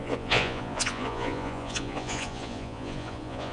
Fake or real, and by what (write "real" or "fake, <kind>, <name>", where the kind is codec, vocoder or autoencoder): fake, vocoder, Vocos